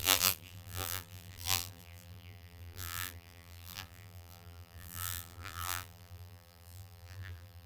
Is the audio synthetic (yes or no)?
yes